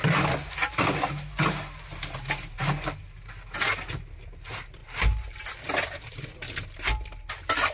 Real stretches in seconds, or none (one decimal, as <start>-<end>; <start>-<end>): 0.0-7.7